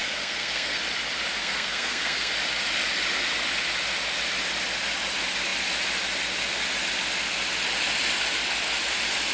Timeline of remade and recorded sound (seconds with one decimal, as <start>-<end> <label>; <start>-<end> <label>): 0.0-0.8 remade; 0.8-1.4 recorded; 1.4-2.3 remade; 2.3-9.3 recorded